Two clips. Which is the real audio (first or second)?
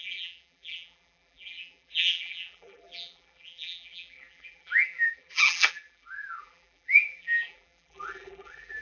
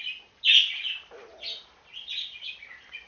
second